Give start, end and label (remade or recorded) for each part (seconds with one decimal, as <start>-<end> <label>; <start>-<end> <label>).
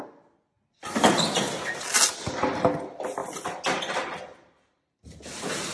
0.0-5.7 recorded